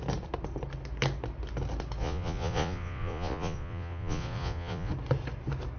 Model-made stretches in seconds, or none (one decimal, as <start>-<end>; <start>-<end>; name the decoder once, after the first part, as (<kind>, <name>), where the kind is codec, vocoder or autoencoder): 2.0-4.9 (vocoder, Vocos)